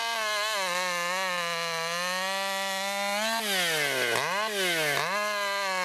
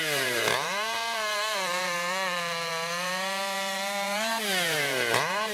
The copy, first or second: second